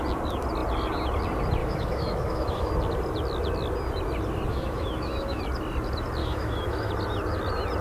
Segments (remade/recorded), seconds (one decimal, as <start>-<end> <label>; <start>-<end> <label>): 0.0-1.6 recorded; 1.6-2.7 remade; 2.7-4.5 recorded; 4.5-5.4 remade; 5.4-6.2 recorded; 6.2-6.9 remade; 6.9-7.8 recorded